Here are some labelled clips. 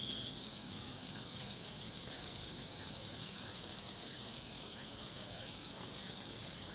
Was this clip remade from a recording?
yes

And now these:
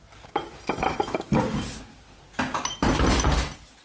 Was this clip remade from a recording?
no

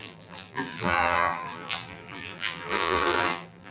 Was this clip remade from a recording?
yes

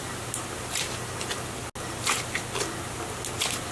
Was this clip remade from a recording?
no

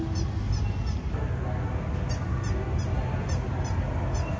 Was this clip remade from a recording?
no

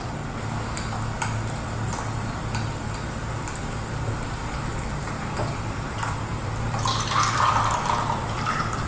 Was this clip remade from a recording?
yes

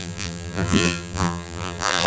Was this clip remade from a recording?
yes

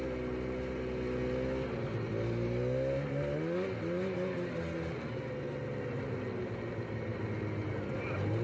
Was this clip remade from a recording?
no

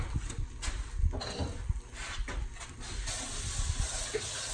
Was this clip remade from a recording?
no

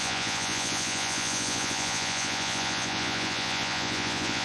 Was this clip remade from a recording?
yes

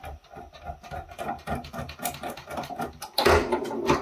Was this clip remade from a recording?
no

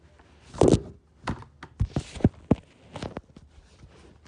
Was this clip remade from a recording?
no